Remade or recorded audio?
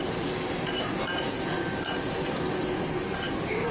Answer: recorded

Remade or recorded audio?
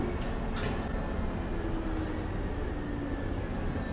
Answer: recorded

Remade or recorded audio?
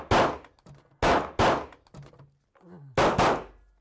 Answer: recorded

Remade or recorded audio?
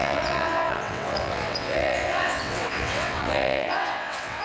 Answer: remade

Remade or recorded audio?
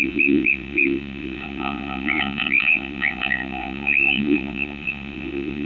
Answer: remade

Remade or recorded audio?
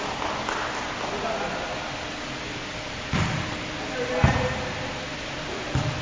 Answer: recorded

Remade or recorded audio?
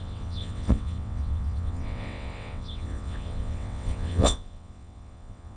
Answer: remade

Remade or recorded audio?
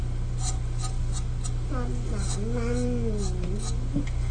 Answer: recorded